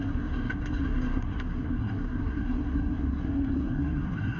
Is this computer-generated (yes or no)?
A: yes